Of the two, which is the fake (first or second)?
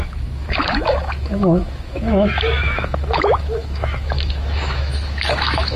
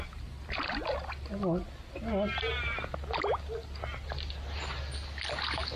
first